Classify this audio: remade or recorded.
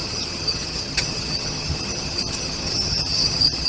remade